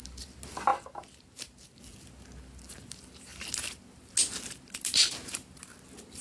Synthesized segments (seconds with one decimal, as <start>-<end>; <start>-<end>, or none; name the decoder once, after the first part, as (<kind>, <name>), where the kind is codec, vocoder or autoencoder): none